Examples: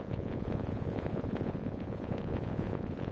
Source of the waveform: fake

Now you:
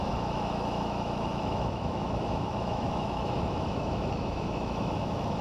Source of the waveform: fake